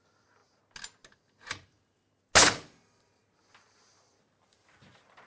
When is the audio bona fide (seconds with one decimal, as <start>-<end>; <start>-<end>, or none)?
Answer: 0.0-5.3